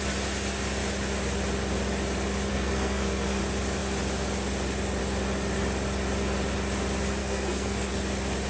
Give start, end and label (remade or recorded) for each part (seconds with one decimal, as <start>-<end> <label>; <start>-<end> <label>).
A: 0.0-2.5 recorded; 2.5-3.4 remade; 3.4-7.2 recorded; 7.2-7.9 remade; 7.9-8.5 recorded

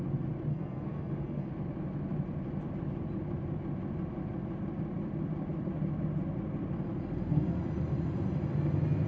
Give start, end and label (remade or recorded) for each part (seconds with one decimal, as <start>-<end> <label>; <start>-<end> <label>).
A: 0.0-0.5 recorded; 0.5-1.5 remade; 1.5-9.1 recorded

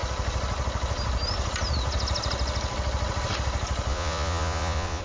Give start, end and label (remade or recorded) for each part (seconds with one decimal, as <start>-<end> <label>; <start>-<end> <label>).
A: 0.0-3.9 recorded; 3.9-5.0 remade

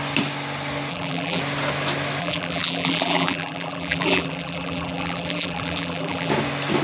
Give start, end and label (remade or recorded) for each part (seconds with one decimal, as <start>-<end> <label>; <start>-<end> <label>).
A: 0.0-0.9 recorded; 0.9-1.4 remade; 1.4-2.2 recorded; 2.2-6.3 remade; 6.3-6.8 recorded

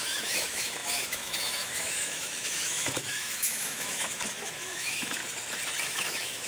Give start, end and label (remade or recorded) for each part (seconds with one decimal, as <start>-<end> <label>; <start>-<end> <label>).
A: 0.0-5.2 remade; 5.2-5.8 recorded; 5.8-6.5 remade

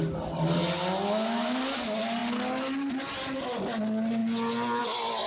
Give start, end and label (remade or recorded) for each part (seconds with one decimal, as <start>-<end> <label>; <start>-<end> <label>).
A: 0.0-5.3 recorded

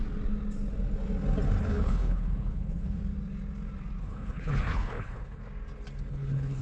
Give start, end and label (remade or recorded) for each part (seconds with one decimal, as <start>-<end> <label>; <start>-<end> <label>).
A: 0.0-1.6 recorded; 1.6-3.0 remade; 3.0-4.0 recorded; 4.0-5.4 remade; 5.4-6.1 recorded; 6.1-6.6 remade